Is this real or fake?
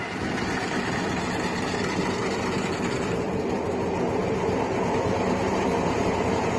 real